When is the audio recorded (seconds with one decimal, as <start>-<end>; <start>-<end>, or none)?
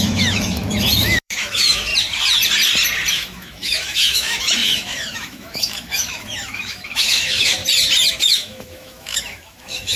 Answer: 1.9-3.1; 7.6-8.1